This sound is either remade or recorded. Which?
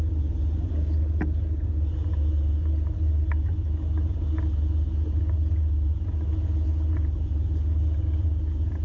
recorded